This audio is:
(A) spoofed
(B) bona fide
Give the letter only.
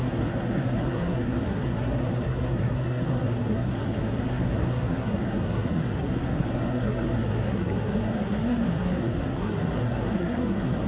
A